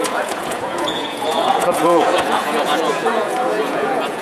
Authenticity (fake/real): fake